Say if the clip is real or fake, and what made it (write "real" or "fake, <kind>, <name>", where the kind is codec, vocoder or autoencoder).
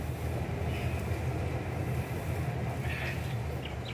real